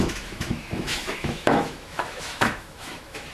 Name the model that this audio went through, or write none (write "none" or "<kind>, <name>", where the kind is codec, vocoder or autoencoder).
autoencoder, DAC-VAE